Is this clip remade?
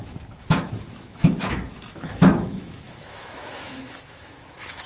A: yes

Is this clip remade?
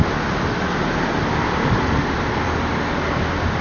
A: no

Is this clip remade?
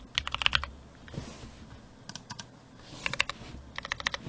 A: no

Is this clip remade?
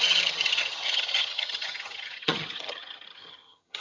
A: yes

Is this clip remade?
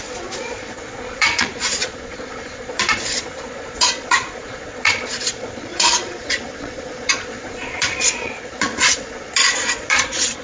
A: yes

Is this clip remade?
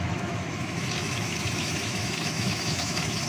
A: yes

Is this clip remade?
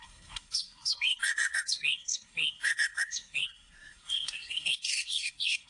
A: yes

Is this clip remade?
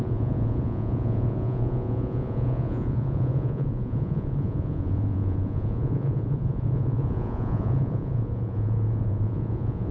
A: yes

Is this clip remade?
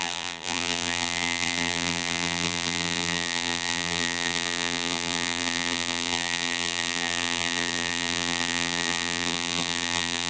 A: yes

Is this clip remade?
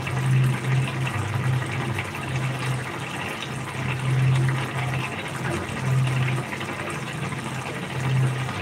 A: no